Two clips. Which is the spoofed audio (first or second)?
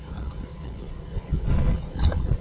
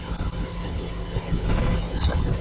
first